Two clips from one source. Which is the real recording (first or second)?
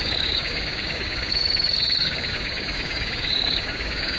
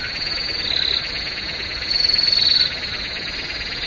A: second